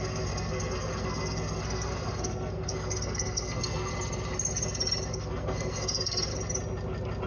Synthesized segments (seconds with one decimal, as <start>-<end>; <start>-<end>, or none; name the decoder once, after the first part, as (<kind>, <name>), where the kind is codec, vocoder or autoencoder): 0.0-3.9 (codec, SNAC); 5.1-6.3